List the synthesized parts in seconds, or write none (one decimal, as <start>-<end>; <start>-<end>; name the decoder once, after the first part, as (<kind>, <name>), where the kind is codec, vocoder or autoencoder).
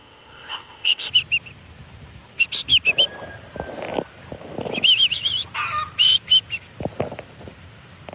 0.0-1.1 (codec, ZipCodec)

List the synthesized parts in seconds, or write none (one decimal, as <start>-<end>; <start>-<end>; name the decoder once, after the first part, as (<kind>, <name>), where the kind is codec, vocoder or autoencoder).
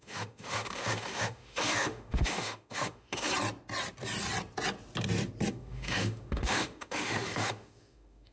0.0-3.3 (autoencoder, DAC-VAE); 5.5-8.3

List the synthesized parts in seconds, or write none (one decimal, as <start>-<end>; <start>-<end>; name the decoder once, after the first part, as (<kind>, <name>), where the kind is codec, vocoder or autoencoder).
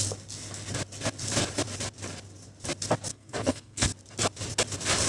3.1-3.9 (codec, SNAC)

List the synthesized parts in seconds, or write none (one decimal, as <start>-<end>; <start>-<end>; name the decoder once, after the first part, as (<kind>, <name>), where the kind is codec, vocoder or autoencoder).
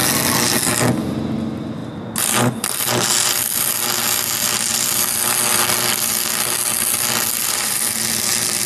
none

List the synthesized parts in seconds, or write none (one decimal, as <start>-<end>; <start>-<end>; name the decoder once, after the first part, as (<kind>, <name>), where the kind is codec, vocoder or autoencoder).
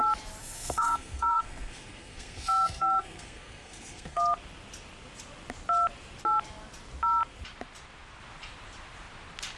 0.4-4.2 (codec, SNAC)